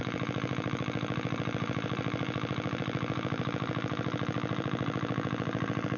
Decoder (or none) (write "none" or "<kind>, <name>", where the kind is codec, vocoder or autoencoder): vocoder, BigVGAN v2